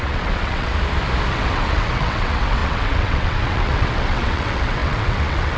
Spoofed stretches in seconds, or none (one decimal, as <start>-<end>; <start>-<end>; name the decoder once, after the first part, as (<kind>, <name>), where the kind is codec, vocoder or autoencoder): 0.0-0.7 (vocoder, WaveNeXt); 1.3-5.6